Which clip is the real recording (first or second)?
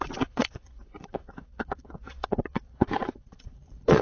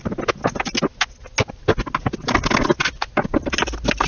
second